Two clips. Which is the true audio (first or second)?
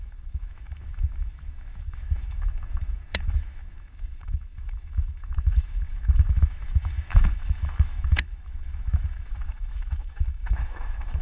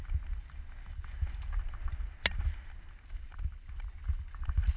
second